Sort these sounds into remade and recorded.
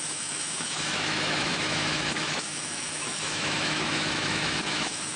remade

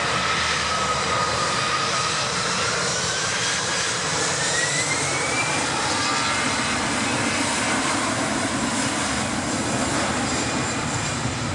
remade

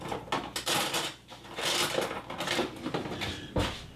recorded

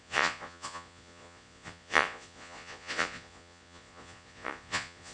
remade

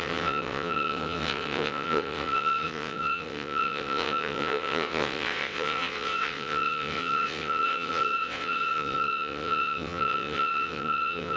remade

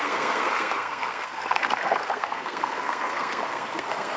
remade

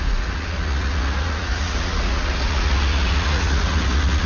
remade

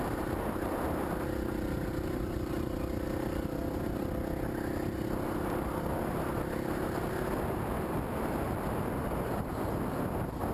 recorded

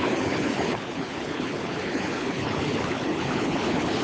remade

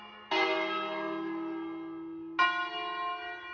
recorded